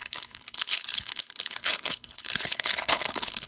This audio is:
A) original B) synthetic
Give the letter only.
B